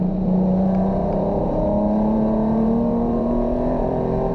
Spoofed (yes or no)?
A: yes